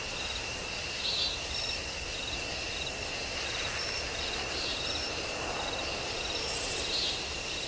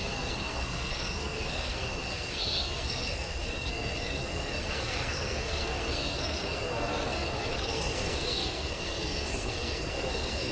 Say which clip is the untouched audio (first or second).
first